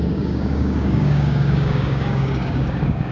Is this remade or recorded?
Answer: remade